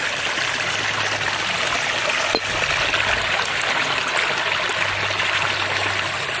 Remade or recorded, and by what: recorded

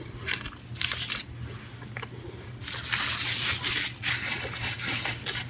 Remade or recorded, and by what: recorded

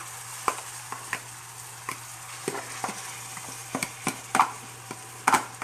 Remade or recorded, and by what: recorded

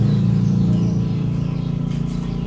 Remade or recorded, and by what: recorded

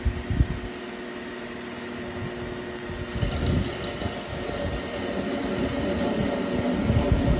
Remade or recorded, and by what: recorded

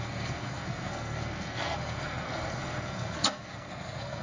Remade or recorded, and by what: remade, codec, SNAC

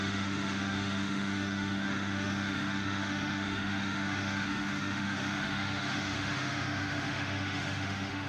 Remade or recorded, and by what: remade, autoencoder, DAC-VAE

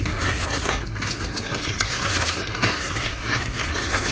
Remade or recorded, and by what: remade, codec, SNAC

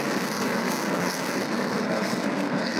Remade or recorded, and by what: remade, codec, SNAC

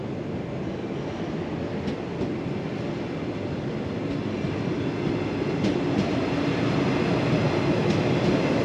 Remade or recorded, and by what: recorded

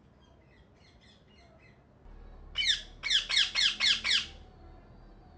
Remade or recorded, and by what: recorded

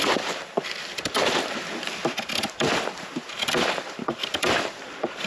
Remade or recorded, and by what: remade, vocoder, BigVGAN v2